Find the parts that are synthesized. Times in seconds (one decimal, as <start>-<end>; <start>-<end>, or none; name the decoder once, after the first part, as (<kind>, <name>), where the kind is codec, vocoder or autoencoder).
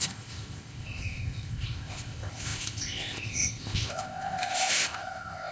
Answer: 0.0-5.5 (codec, ZipCodec)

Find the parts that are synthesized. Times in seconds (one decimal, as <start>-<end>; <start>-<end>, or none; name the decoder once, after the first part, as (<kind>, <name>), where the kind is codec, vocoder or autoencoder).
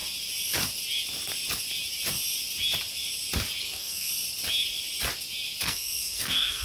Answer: 3.6-4.1 (codec, SNAC); 5.6-6.6